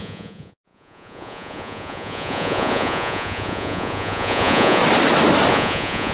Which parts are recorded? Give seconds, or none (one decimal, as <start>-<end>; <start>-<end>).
4.8-5.5